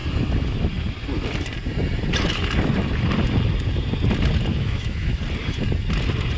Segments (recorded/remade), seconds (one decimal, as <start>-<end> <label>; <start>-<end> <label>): 0.0-4.5 recorded; 4.5-5.2 remade; 5.2-6.4 recorded